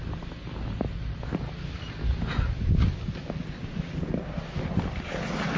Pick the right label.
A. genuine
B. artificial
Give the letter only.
A